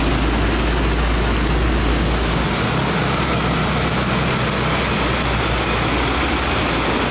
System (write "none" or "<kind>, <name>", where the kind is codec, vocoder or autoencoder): none